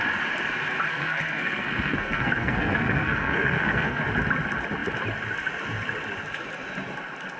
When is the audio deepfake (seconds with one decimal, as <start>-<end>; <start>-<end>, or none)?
0.9-4.0